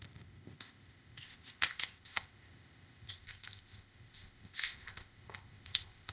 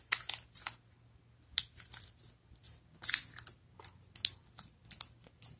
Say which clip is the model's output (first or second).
first